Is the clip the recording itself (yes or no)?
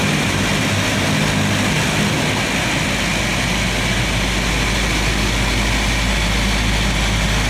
yes